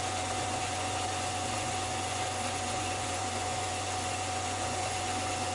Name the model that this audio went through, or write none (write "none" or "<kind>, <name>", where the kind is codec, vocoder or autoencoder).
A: vocoder, Vocos